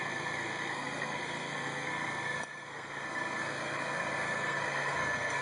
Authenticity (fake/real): fake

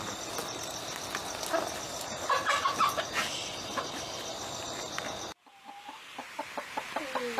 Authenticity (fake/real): real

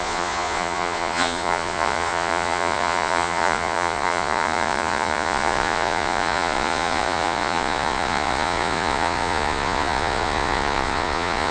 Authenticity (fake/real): fake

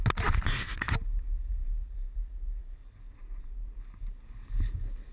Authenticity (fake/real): real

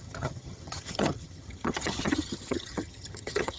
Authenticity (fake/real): fake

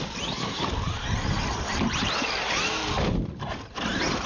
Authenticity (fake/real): real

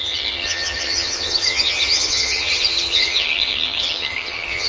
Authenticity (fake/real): fake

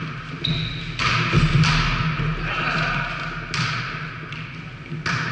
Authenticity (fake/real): real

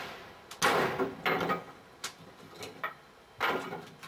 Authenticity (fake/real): real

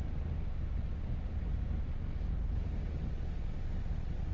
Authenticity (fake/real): real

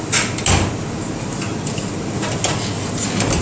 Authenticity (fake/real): real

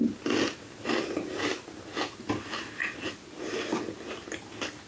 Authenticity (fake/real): real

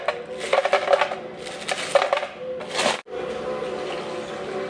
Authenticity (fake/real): real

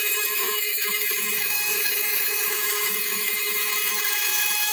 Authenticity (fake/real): fake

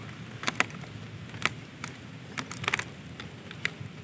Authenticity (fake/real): real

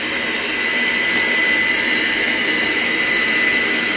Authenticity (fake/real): real